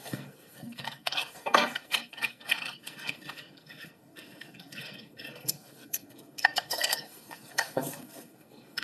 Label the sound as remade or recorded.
remade